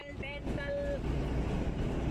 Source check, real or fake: real